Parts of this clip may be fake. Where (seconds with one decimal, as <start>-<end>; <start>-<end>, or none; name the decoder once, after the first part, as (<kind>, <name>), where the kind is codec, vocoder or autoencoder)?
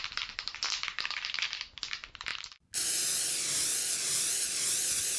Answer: none